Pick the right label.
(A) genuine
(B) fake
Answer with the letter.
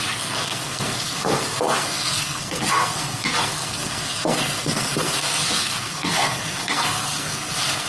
B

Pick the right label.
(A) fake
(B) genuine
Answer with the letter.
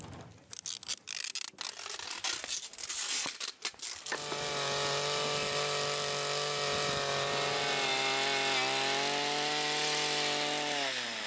B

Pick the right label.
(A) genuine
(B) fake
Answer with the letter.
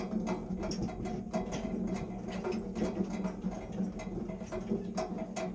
A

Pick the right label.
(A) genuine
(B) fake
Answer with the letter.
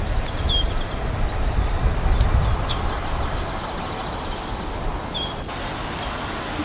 A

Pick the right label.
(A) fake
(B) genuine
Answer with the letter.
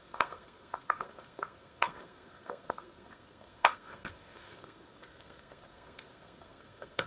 A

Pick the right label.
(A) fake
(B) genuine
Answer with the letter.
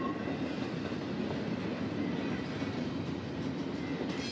B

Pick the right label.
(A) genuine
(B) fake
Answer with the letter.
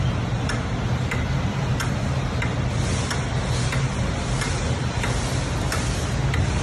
A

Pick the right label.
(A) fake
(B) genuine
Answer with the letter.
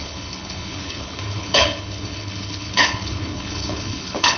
A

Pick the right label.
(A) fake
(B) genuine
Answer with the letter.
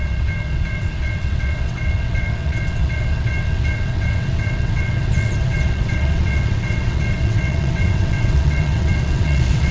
A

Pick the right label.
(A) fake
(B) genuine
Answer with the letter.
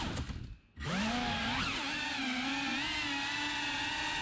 B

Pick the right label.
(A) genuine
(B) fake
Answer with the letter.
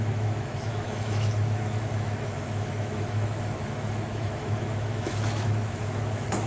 B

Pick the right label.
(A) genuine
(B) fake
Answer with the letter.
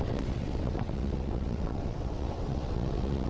B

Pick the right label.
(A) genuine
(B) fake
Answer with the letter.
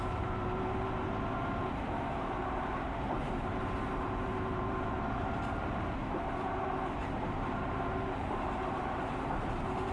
B